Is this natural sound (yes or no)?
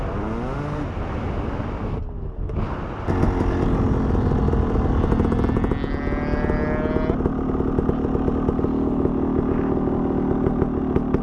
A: yes